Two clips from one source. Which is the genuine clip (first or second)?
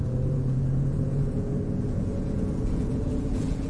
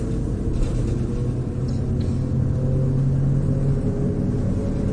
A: second